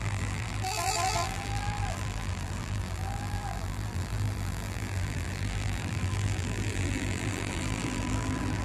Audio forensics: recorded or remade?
remade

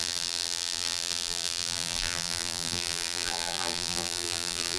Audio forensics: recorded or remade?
remade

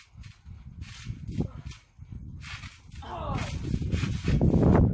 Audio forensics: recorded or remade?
recorded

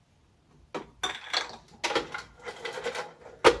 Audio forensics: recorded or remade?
recorded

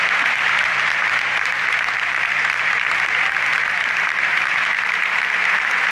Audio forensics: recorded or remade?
remade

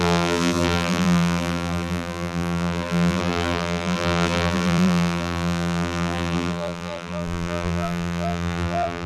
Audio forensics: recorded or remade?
remade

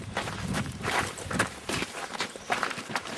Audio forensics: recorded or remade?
remade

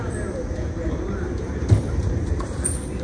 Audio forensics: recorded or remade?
remade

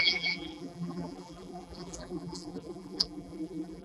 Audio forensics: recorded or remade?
remade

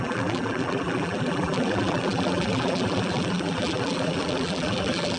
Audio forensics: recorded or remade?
remade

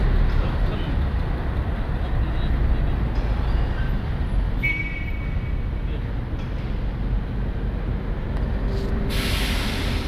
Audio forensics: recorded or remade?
recorded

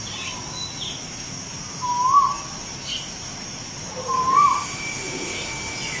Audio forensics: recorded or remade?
recorded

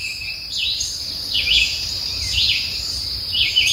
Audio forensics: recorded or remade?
remade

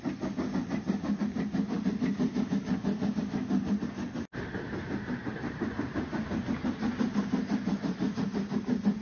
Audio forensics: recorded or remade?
recorded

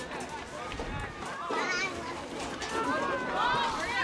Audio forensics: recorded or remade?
recorded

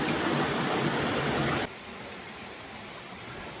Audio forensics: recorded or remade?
recorded